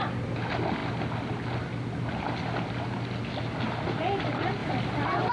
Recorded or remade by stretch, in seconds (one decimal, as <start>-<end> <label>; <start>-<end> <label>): 0.0-5.3 recorded